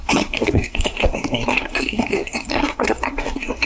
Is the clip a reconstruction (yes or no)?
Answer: yes